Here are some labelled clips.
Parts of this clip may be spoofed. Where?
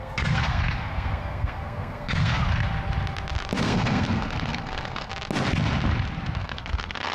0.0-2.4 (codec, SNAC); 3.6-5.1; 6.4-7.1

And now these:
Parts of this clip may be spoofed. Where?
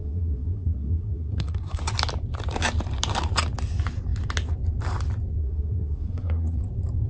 0.0-1.8 (codec, SNAC); 5.4-6.6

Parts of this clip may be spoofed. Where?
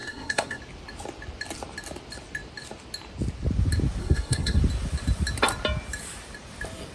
0.0-0.6 (codec, SNAC); 4.0-4.6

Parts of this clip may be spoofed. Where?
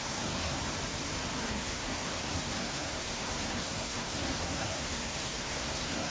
0.0-0.6 (codec, SNAC); 1.4-6.1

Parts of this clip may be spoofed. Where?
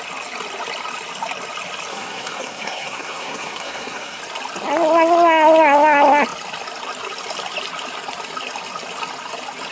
1.9-4.2 (codec, SNAC)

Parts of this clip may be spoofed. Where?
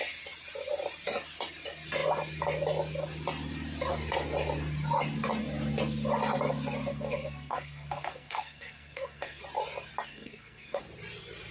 6.9-9.4 (codec, SNAC); 10.1-10.8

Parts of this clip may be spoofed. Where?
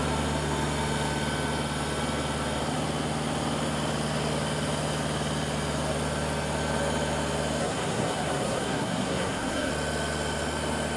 7.6-9.7 (codec, SNAC)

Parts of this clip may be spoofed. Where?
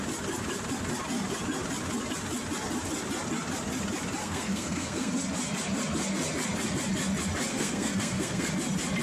4.2-5.1 (codec, SNAC); 7.5-8.5